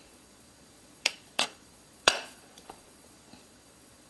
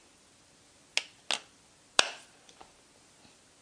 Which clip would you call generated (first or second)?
first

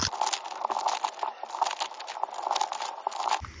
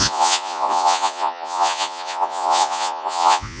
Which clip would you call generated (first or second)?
second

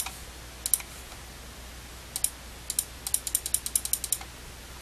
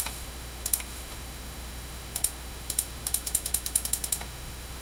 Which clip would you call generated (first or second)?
second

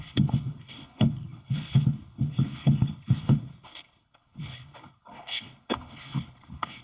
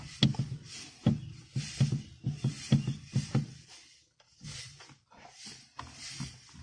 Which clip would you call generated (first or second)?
first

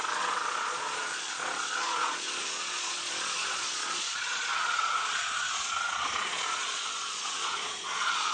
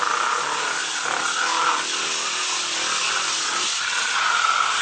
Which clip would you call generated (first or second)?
first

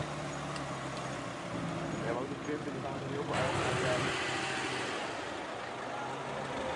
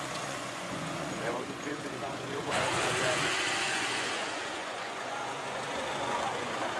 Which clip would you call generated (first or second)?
second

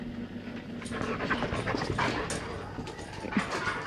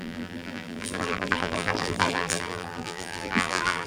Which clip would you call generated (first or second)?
second